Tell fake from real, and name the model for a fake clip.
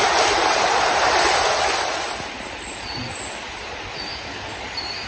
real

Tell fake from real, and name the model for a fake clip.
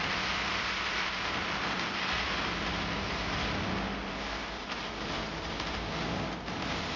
real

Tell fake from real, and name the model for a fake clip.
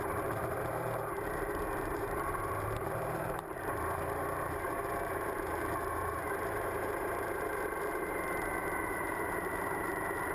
fake, vocoder, BigVGAN v2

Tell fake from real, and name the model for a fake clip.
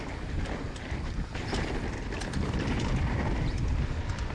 fake, vocoder, BigVGAN v2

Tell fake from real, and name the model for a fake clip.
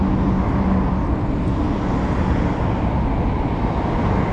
real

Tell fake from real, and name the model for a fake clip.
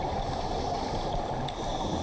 real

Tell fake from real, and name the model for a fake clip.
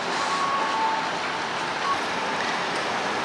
real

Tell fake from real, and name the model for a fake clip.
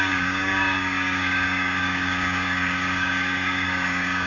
fake, codec, DAC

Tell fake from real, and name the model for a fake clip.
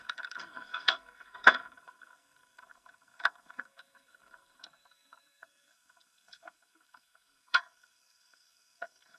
fake, codec, SNAC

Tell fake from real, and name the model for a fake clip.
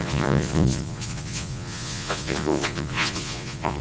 fake, vocoder, Vocos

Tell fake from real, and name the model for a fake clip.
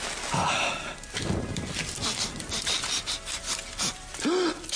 fake, vocoder, BigVGAN v2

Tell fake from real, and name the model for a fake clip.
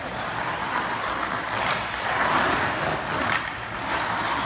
real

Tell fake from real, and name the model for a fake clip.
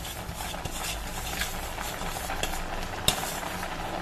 real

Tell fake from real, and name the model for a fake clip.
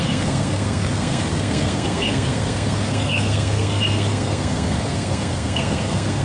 fake, codec, SNAC